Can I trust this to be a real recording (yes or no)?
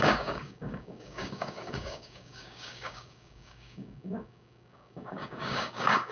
no